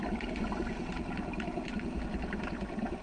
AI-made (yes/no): no